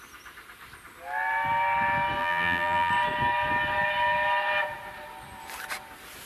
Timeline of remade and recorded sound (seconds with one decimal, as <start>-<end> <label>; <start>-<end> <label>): 0.0-2.2 recorded; 2.2-2.9 remade; 2.9-6.3 recorded